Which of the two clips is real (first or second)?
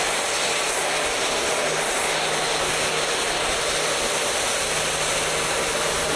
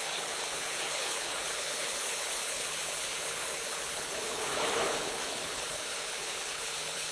first